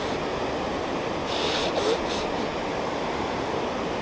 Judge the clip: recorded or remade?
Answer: recorded